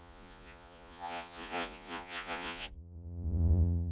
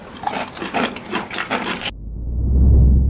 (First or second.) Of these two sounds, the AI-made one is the first